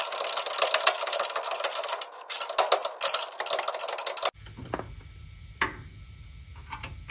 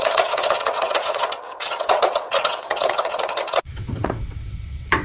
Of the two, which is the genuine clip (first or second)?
first